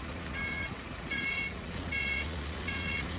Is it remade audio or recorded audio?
remade